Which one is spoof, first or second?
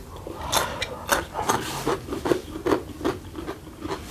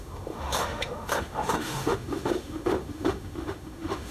second